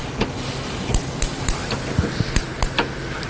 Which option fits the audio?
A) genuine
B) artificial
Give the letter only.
A